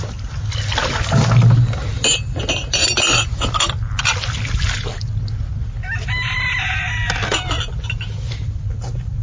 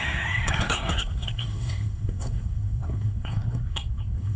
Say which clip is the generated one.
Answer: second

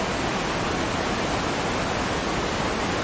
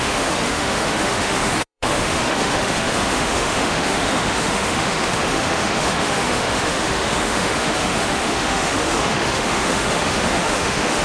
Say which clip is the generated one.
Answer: second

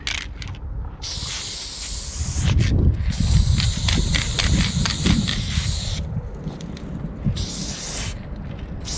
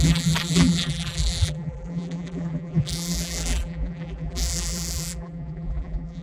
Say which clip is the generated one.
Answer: second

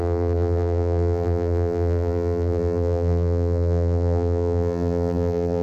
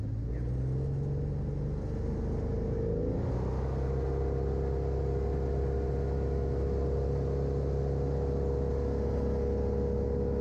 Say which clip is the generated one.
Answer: first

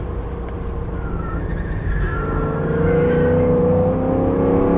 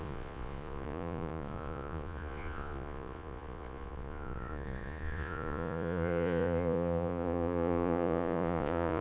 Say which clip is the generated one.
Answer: second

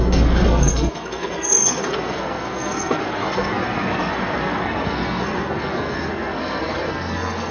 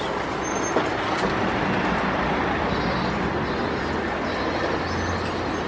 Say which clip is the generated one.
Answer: first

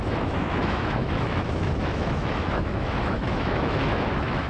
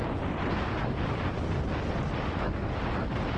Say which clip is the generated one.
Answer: first